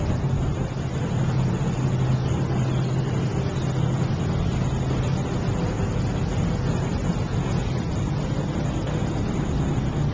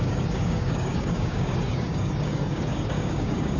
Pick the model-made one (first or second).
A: second